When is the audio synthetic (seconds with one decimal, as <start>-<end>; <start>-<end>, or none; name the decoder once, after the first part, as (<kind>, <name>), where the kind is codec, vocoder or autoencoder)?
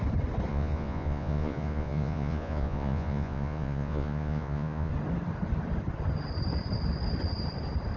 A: 0.5-4.9 (vocoder, Vocos)